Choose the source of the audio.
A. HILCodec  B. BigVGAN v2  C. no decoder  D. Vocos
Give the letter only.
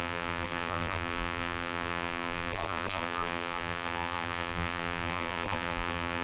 B